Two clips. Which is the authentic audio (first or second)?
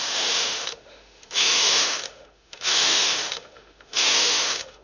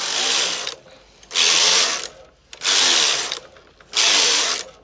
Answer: second